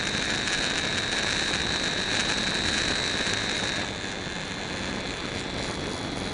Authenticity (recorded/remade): recorded